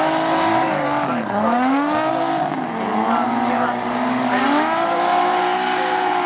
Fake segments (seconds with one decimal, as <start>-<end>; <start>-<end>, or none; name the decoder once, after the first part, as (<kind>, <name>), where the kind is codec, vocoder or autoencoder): 0.5-2.1 (codec, DAC); 2.9-4.4